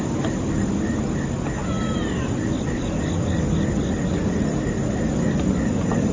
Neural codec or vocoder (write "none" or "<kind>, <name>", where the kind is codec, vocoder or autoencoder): none